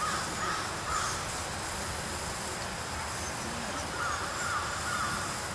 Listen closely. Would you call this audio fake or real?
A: real